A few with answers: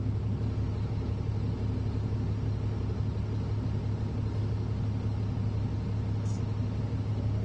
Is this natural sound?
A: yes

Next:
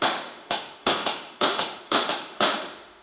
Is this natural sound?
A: no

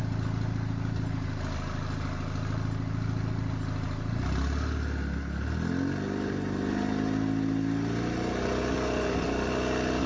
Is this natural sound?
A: yes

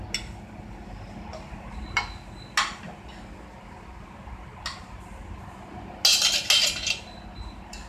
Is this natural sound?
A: yes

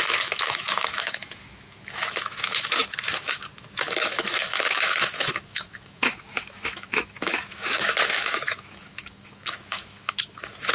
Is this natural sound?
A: no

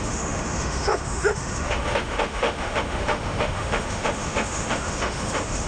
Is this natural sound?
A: no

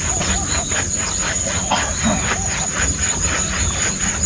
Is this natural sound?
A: yes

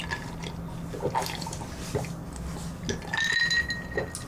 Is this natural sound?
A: yes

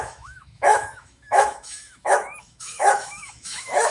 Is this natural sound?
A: no